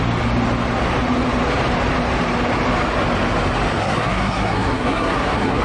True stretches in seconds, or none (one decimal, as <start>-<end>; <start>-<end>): 0.0-3.8